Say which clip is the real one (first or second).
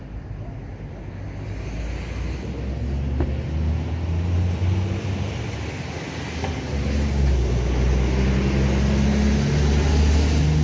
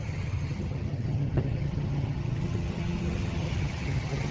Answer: first